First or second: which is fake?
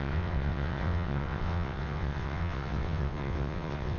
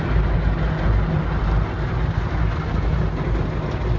first